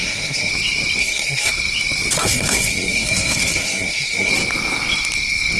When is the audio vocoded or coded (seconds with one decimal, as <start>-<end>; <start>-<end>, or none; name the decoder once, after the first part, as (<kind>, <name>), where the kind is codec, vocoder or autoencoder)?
0.0-0.5 (codec, SNAC); 1.0-1.5; 2.2-4.3